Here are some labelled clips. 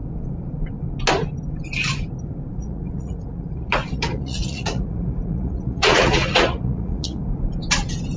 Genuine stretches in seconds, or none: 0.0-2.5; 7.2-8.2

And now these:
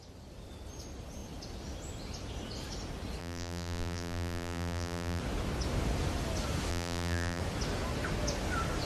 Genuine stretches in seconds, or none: 0.0-3.2; 5.2-6.7; 7.4-8.9

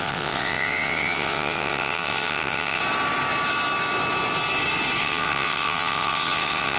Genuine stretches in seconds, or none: 2.8-5.0

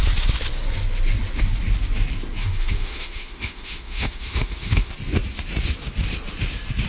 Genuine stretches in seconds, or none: 0.0-2.4; 4.9-6.9

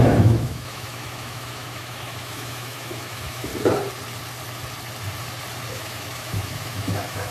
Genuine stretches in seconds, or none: 3.5-5.7

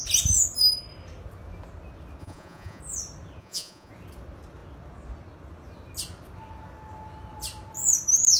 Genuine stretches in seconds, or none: 0.0-2.2; 2.8-3.4; 3.9-8.4

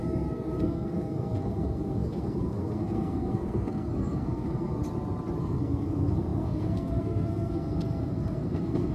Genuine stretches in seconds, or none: 4.8-5.4

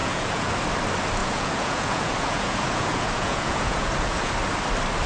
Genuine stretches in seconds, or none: 0.5-1.2; 4.3-5.1